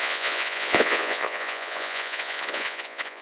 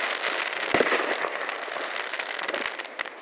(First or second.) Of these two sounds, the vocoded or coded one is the first